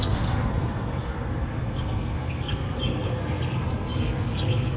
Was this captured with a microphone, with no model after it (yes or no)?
no